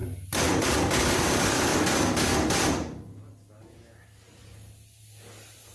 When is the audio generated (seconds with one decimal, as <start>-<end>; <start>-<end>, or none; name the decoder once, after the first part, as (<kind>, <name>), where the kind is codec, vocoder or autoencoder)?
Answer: none